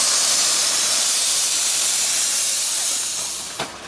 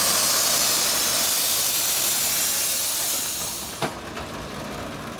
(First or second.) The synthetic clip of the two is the first